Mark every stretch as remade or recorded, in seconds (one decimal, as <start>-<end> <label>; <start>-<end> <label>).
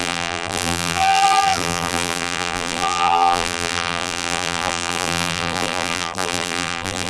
0.0-7.1 remade